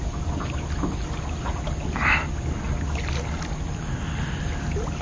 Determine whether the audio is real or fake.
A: real